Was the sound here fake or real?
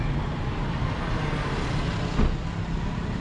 real